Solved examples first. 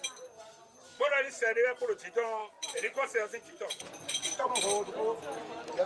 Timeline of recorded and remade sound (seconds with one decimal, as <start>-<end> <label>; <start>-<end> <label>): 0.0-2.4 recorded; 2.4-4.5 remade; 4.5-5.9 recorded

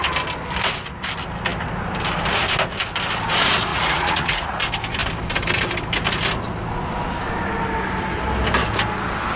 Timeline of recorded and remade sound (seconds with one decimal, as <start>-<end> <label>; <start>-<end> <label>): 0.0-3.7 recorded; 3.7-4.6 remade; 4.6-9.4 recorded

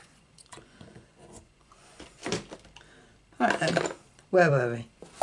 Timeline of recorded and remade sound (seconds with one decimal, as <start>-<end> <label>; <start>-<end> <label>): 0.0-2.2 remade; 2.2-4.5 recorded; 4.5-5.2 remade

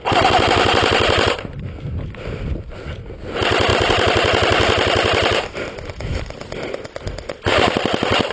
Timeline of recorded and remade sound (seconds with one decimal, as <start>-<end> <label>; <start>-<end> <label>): 0.0-8.3 recorded

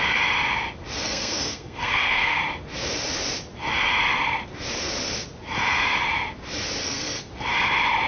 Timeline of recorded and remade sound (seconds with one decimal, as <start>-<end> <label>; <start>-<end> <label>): 0.0-1.0 recorded; 1.0-2.4 remade; 2.4-6.8 recorded; 6.8-7.3 remade; 7.3-8.1 recorded